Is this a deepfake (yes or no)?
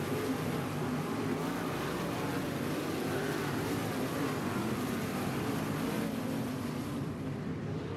yes